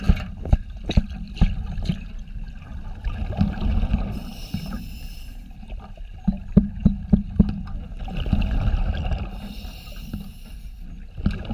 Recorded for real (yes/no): yes